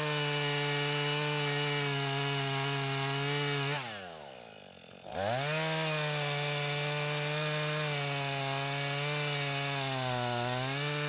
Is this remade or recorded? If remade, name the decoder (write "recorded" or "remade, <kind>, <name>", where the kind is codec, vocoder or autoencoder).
recorded